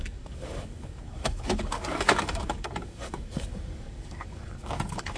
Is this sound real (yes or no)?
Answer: no